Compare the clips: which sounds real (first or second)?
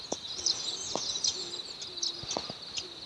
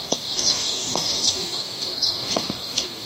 first